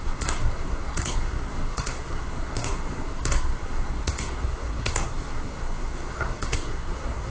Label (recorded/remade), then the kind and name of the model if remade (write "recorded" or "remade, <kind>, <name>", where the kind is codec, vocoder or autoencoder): remade, codec, SNAC